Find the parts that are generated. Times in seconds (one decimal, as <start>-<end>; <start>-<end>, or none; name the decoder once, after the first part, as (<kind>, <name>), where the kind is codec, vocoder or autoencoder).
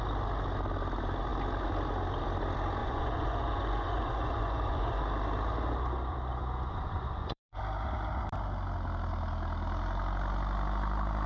2.8-5.0 (vocoder, Vocos); 6.7-7.6